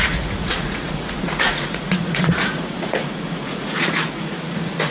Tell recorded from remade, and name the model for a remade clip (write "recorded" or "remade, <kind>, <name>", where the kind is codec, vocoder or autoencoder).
remade, vocoder, Vocos